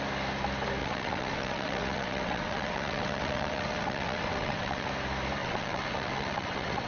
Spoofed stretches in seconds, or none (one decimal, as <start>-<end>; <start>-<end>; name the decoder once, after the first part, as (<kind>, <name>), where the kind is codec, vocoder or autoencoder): 0.8-4.9 (vocoder, WaveNeXt); 5.4-6.9